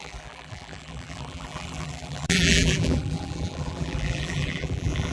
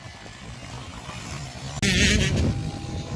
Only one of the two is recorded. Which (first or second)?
second